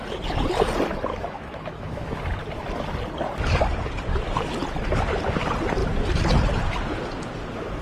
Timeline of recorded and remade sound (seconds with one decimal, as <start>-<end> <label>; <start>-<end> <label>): 0.0-1.1 recorded; 1.1-2.2 remade; 2.2-7.8 recorded